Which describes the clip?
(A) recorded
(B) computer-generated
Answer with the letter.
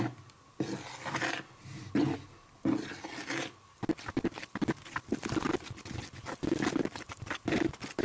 A